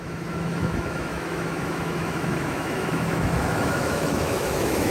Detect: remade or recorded remade